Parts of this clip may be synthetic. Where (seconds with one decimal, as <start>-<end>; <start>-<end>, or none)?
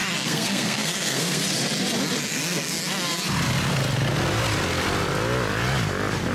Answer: 0.0-1.4; 2.3-2.8